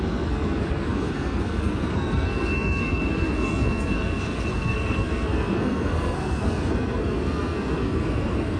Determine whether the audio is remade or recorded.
remade